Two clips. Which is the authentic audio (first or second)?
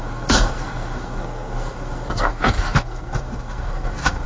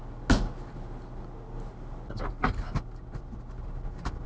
second